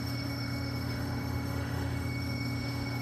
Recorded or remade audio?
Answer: remade